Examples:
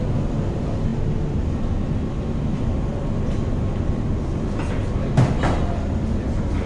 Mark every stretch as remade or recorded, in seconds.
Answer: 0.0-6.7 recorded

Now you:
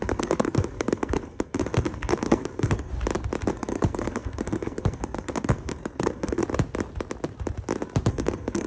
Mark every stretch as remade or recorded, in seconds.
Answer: 0.0-2.9 remade; 2.9-3.5 recorded; 3.5-6.4 remade; 6.4-8.1 recorded; 8.1-8.7 remade

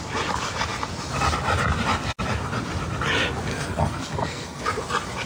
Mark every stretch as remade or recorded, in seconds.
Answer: 0.0-3.5 recorded; 3.5-4.6 remade; 4.6-5.3 recorded